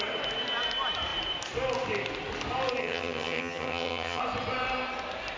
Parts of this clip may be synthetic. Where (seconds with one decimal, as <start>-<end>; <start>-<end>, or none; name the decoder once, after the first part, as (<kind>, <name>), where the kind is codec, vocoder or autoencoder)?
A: 2.8-4.2 (vocoder, HiFi-GAN)